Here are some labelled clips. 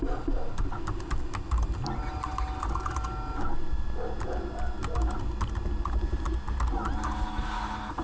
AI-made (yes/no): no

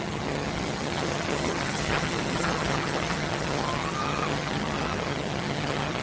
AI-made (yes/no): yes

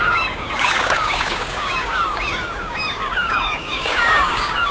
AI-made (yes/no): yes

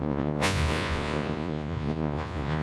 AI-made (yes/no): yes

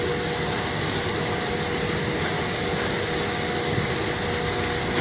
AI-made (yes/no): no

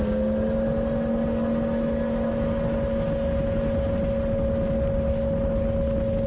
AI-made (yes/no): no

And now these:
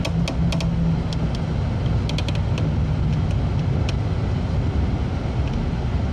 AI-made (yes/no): no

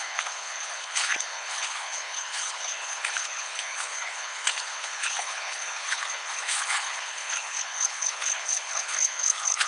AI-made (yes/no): yes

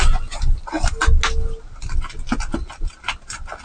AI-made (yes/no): no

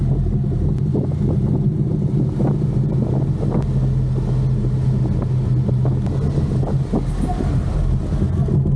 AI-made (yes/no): no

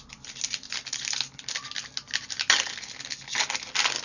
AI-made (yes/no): no